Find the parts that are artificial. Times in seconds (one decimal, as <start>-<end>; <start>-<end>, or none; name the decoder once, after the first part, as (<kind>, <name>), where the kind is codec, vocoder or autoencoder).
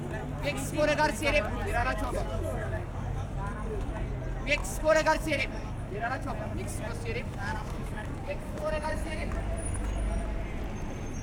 1.8-3.9 (codec, DAC); 4.6-6.3; 7.2-9.3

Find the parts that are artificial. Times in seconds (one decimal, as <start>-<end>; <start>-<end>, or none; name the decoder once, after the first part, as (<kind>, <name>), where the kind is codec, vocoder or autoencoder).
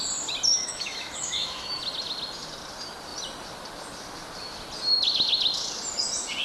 0.5-1.7 (autoencoder, DAC-VAE)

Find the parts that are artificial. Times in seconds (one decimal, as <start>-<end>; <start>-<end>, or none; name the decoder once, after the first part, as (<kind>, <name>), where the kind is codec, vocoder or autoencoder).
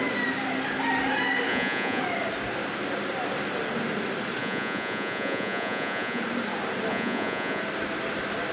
1.5-2.0 (vocoder, Vocos); 4.4-6.2; 6.9-7.6